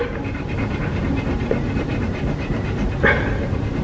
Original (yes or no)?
no